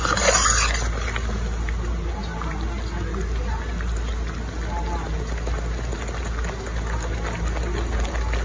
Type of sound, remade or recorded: recorded